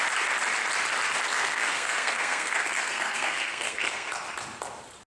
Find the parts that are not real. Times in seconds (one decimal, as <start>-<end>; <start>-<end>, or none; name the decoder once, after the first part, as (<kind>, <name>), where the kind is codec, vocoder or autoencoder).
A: 1.3-4.1 (codec, SNAC)